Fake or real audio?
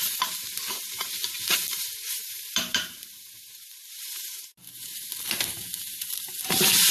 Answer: fake